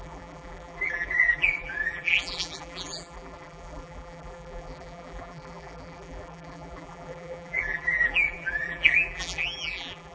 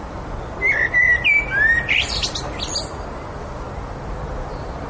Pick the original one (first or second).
second